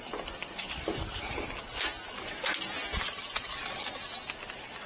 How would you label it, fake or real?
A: real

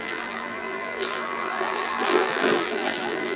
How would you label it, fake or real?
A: fake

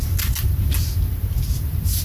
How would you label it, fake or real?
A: real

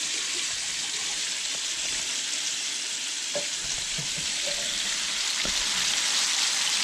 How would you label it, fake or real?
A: fake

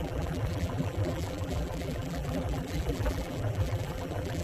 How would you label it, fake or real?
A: fake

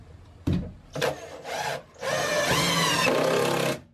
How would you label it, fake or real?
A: real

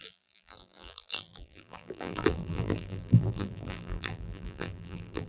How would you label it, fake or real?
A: fake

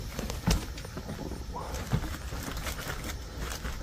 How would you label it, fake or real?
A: real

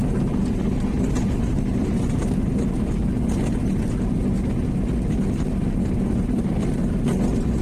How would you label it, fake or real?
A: real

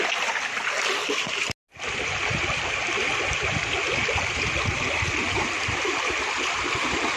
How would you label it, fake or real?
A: real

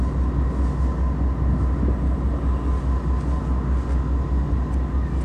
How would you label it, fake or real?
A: real